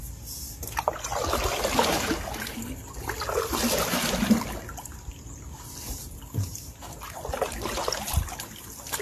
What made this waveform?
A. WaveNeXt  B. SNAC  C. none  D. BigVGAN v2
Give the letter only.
C